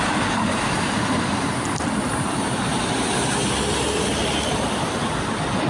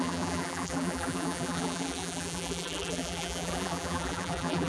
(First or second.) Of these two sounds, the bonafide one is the first